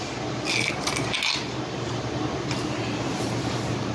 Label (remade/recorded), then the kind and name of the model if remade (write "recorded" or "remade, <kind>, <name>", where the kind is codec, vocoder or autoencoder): recorded